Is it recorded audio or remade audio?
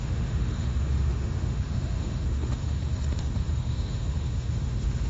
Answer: remade